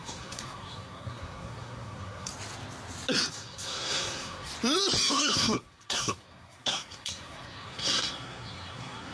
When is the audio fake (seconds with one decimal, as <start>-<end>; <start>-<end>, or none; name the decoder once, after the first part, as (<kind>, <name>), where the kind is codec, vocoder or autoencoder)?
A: 0.0-2.3 (codec, SNAC); 3.3-4.5; 5.1-9.1

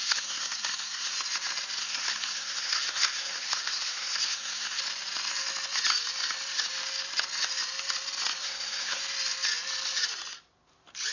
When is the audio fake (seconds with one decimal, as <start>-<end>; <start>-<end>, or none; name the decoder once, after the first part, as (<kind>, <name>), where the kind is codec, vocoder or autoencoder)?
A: 0.0-1.1 (codec, SNAC); 1.8-4.8; 8.4-9.0

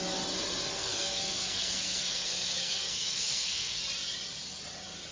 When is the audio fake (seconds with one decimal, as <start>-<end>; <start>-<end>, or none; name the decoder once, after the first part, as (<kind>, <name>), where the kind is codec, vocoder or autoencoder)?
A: 0.7-3.8 (codec, SNAC)

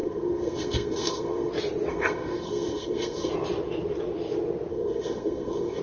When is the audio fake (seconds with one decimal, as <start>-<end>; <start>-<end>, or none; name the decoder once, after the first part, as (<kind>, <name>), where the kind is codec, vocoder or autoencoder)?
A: 0.0-1.5 (codec, SNAC); 1.9-3.3; 4.7-5.8